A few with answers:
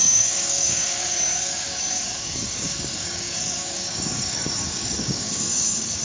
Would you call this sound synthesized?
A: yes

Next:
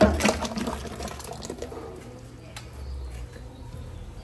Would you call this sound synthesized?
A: no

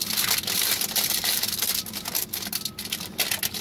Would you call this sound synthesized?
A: no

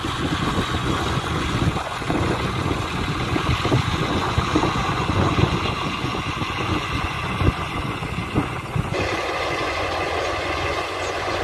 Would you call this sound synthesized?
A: yes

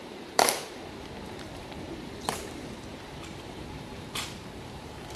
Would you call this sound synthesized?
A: yes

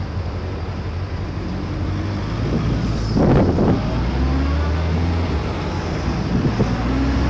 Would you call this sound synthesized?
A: no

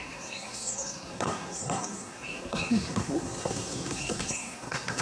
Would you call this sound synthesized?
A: yes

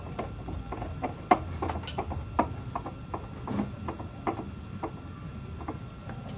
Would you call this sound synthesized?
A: no